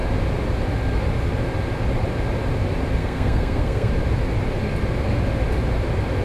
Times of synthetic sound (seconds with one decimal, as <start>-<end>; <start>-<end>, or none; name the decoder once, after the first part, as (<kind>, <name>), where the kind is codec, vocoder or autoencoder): 3.0-3.9 (codec, SNAC)